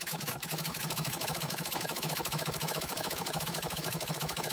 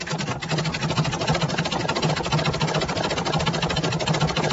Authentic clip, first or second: second